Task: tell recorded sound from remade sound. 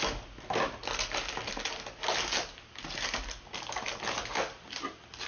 recorded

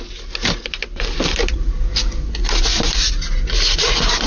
recorded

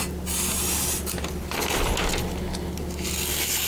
recorded